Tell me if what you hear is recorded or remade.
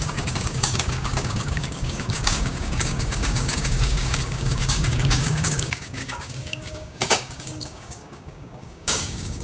remade